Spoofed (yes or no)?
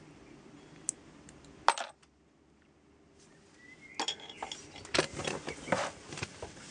no